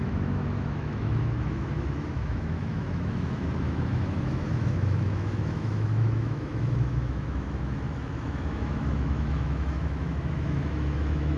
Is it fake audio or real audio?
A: fake